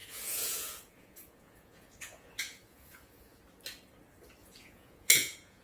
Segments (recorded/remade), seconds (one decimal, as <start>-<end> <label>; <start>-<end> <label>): 0.0-3.4 remade; 3.4-4.4 recorded; 4.4-5.6 remade